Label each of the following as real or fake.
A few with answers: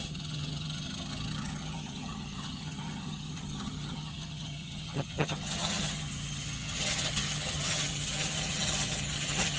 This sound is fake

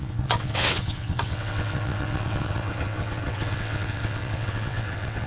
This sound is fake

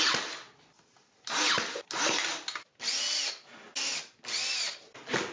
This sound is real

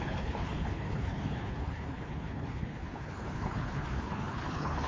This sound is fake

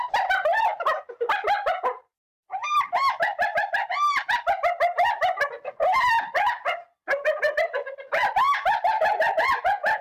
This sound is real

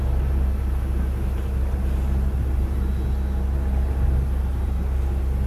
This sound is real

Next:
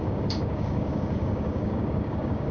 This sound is fake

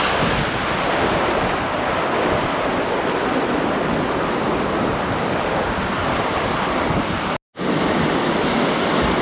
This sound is real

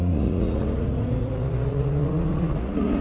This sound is fake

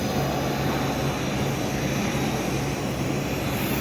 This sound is real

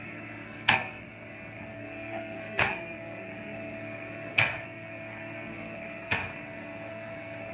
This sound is fake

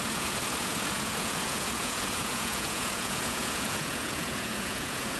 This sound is fake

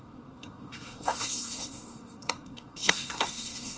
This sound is fake